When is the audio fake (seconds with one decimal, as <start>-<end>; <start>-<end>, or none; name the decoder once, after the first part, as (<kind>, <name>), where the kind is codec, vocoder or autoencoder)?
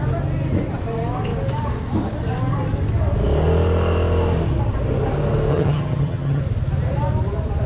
5.5-6.4 (vocoder, HiFi-GAN)